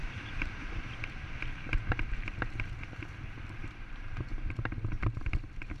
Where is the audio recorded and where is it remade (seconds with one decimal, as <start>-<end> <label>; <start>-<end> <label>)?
0.0-2.4 remade; 2.4-3.6 recorded; 3.6-5.0 remade; 5.0-5.8 recorded